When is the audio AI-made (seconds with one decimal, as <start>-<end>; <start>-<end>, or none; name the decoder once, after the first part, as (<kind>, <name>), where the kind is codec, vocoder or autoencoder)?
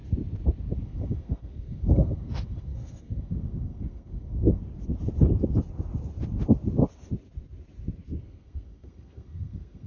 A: 0.8-4.6 (codec, SNAC); 8.2-9.9